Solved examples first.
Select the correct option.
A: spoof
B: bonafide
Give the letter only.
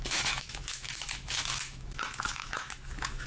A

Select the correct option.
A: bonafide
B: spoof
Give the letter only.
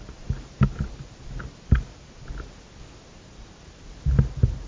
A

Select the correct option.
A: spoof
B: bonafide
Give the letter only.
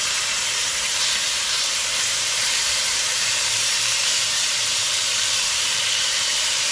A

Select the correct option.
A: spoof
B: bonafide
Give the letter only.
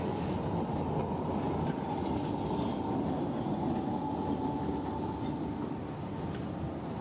B